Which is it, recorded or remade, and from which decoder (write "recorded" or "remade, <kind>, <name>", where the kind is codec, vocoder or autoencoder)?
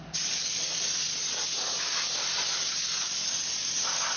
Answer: recorded